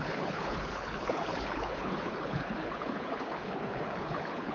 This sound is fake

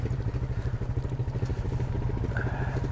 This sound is real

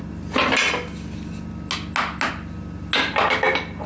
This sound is real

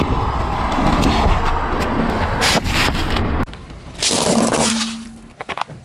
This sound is real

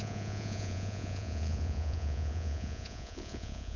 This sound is fake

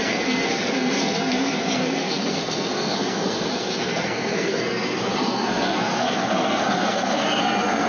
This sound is fake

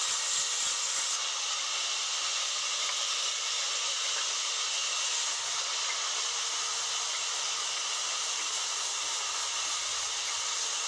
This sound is real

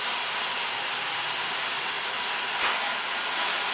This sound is real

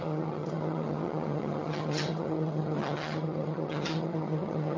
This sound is fake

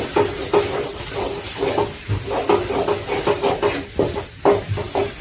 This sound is real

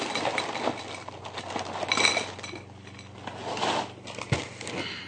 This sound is real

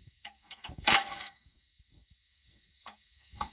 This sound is fake